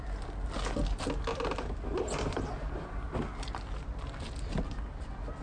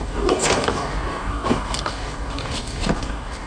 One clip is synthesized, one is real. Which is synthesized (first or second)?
second